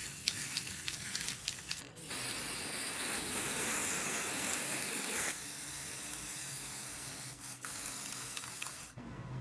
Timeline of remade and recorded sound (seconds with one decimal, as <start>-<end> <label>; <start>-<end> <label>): 0.0-2.0 remade; 2.0-2.6 recorded; 2.6-9.4 remade